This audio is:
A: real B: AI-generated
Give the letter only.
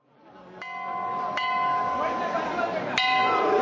A